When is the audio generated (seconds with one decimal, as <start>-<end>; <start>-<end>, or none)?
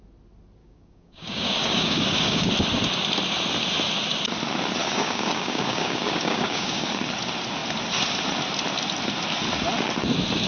0.6-2.5; 4.8-6.9